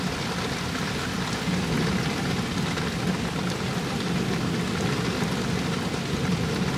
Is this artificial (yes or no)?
no